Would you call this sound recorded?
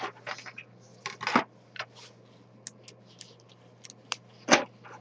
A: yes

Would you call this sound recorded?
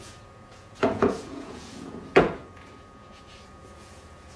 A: no